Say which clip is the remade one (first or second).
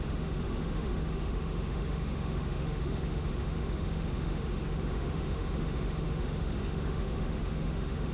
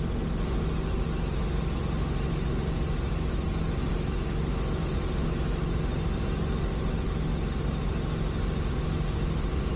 first